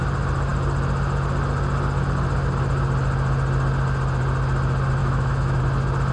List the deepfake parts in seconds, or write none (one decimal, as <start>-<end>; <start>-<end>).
5.0-5.6